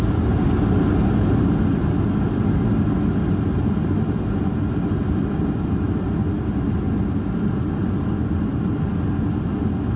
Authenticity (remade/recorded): recorded